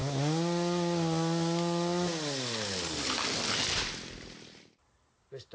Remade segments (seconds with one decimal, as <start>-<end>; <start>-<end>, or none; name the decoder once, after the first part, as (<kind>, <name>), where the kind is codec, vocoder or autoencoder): none